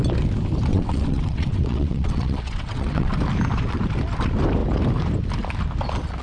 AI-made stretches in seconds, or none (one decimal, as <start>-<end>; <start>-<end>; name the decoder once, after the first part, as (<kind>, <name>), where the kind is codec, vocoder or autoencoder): 0.7-3.1 (vocoder, WaveNeXt)